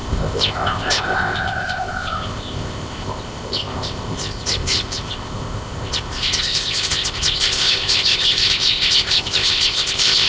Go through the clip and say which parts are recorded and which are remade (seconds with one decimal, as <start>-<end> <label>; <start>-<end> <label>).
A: 0.0-10.3 remade